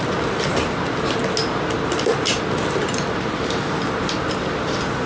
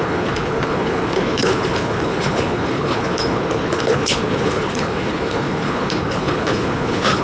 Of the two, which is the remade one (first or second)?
second